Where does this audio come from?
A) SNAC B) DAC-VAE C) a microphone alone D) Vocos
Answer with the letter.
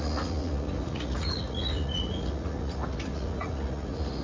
D